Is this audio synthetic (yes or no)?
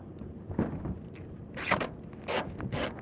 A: no